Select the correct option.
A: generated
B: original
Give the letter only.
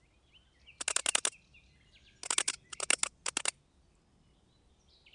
B